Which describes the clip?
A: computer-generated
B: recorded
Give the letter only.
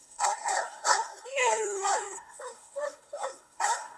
A